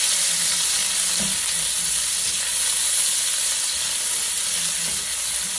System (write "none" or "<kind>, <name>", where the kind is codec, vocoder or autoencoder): none